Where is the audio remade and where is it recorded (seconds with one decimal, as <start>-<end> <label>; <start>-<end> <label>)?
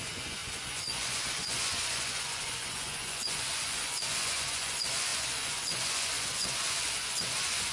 0.0-7.7 remade